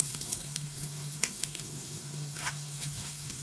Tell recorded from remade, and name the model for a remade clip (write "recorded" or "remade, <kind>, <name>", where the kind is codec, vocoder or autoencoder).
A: remade, codec, SNAC